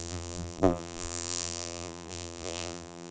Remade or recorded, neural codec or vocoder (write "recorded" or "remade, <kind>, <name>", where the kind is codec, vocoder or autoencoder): remade, vocoder, BigVGAN v2